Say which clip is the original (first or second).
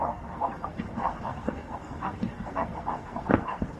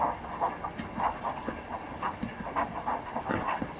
second